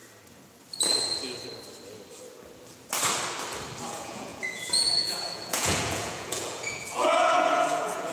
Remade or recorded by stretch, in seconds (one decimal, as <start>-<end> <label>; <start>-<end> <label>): 0.0-3.9 recorded; 3.9-8.1 remade